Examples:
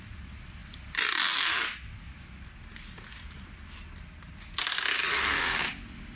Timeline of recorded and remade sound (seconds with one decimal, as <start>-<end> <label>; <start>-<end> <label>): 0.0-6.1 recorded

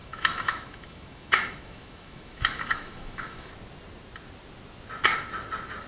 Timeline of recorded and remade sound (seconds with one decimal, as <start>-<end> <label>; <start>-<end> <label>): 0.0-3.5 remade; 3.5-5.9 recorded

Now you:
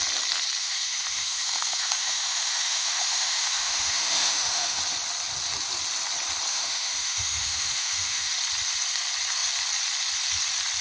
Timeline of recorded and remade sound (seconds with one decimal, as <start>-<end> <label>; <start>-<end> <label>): 0.0-0.6 recorded; 0.6-4.8 remade; 4.8-6.5 recorded; 6.5-8.3 remade; 8.3-10.8 recorded

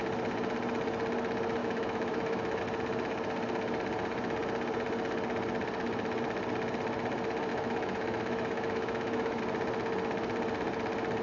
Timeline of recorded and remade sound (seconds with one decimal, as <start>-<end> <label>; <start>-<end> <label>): 0.0-1.6 recorded; 1.6-2.6 remade; 2.6-7.5 recorded; 7.5-9.4 remade; 9.4-11.2 recorded

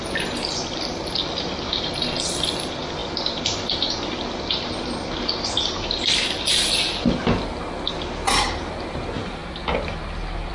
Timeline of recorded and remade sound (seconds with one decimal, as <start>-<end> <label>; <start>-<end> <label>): 0.0-10.5 recorded